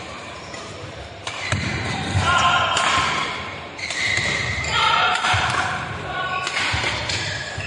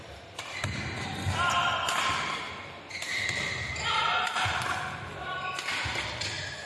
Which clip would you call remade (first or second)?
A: first